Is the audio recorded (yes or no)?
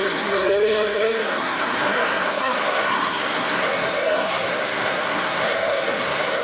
no